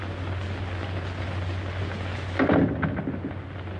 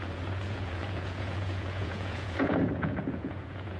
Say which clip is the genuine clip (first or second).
first